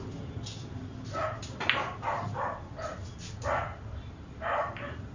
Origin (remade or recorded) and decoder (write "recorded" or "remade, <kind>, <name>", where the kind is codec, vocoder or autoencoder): remade, vocoder, BigVGAN v2